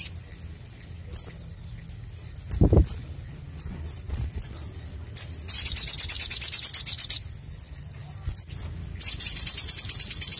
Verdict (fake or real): real